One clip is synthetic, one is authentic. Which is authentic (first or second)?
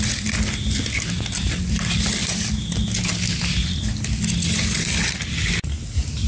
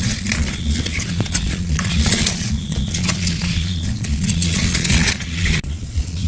first